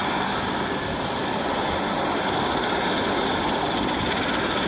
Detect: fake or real real